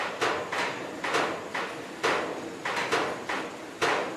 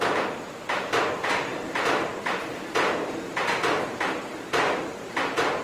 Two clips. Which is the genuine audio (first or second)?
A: first